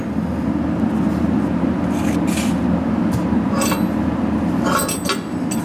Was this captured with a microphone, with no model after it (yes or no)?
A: yes